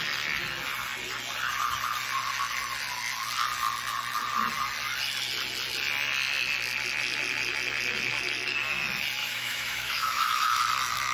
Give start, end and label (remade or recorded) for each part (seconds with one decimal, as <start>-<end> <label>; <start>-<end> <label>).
0.0-9.2 recorded; 9.2-10.6 remade; 10.6-11.1 recorded